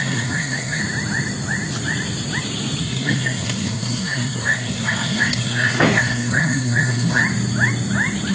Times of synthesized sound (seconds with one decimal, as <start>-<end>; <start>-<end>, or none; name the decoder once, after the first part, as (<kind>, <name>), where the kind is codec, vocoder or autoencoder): 0.0-0.8 (codec, SNAC); 2.8-7.2